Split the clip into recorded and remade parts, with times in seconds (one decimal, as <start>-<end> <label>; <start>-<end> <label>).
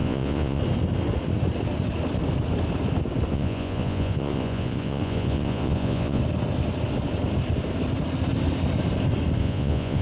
0.0-0.6 remade; 0.6-3.3 recorded; 3.3-6.2 remade; 6.2-9.4 recorded; 9.4-10.0 remade